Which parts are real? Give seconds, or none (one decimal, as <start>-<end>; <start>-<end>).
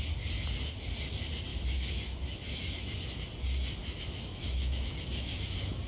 0.0-1.5; 3.2-3.8